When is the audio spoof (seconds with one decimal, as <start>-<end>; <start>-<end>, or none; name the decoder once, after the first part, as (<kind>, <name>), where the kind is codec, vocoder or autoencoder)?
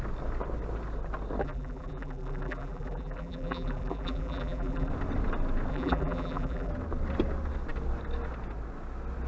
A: 1.4-4.9 (vocoder, BigVGAN v2); 5.7-6.7